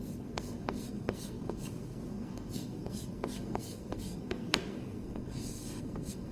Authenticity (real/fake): fake